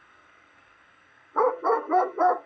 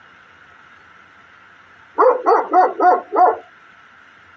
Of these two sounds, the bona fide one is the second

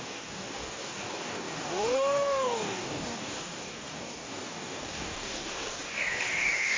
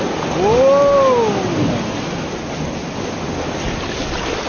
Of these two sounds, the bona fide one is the second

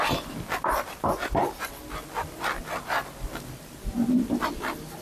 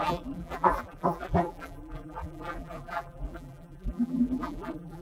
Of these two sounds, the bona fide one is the first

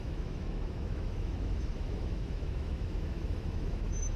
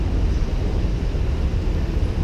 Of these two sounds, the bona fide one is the second